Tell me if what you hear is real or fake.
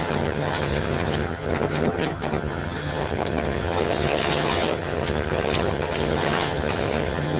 fake